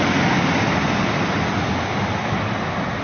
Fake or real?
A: real